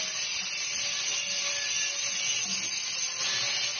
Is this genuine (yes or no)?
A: yes